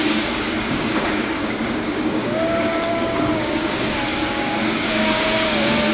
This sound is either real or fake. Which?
fake